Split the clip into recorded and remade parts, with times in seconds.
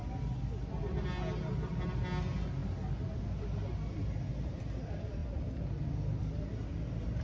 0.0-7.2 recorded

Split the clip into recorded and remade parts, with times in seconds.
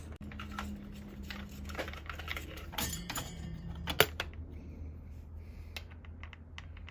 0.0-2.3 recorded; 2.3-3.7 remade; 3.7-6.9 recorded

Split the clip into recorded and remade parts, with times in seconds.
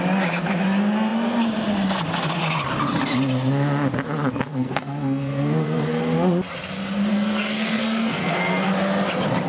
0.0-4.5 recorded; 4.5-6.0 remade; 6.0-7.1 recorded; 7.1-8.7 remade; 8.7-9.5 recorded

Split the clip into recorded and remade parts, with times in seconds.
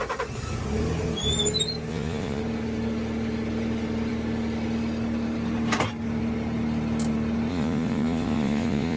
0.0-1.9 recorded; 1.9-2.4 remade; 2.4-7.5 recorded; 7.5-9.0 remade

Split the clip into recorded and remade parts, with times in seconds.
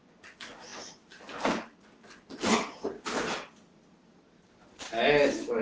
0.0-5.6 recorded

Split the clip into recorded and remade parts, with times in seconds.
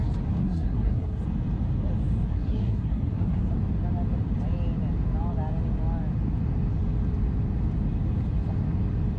0.0-0.4 recorded; 0.4-1.2 remade; 1.2-2.3 recorded; 2.3-3.5 remade; 3.5-9.2 recorded